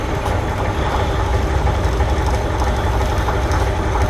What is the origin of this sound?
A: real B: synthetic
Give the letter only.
A